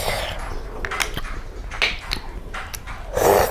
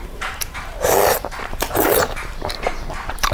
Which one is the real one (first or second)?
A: first